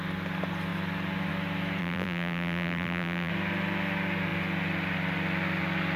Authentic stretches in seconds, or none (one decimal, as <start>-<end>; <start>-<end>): 0.0-1.8; 3.3-6.0